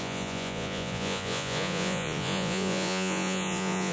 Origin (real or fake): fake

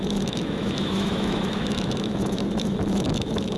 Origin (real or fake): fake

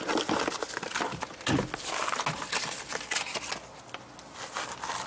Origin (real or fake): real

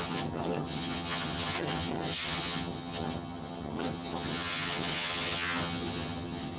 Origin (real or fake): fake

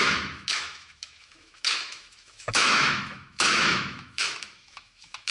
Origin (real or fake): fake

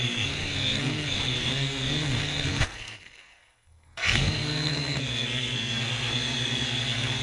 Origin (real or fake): fake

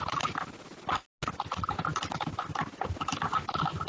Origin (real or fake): real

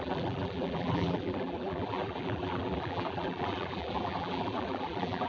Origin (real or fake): fake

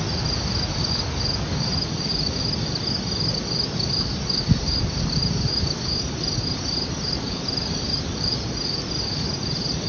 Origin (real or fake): real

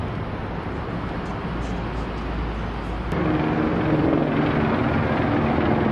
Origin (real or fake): real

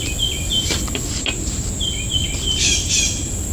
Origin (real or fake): real